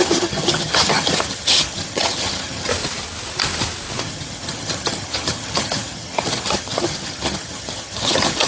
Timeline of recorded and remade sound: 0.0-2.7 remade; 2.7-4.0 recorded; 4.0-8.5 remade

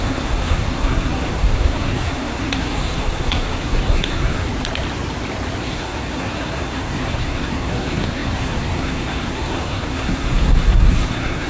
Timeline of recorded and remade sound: 0.0-4.5 remade; 4.5-5.6 recorded; 5.6-11.5 remade

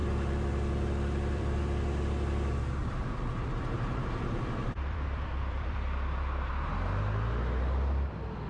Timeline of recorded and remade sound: 0.0-1.6 remade; 1.6-2.8 recorded; 2.8-6.5 remade; 6.5-8.5 recorded